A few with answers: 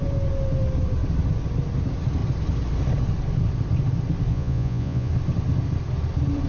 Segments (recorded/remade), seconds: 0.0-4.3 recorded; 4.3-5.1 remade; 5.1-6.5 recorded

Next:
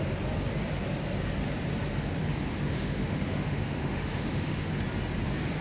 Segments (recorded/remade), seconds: 0.0-2.5 recorded; 2.5-4.7 remade; 4.7-5.6 recorded

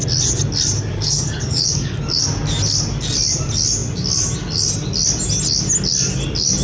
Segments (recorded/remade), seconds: 0.0-0.9 recorded; 0.9-2.2 remade; 2.2-6.6 recorded